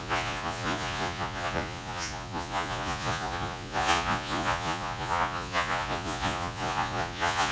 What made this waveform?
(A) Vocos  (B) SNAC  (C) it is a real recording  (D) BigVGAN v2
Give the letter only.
A